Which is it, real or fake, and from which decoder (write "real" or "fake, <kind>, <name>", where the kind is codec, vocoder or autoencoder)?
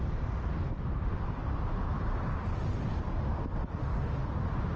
fake, vocoder, BigVGAN v2